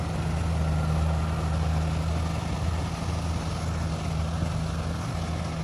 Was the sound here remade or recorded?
recorded